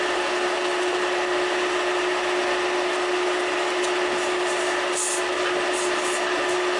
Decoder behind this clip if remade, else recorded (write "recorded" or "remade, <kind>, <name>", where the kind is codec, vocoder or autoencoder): recorded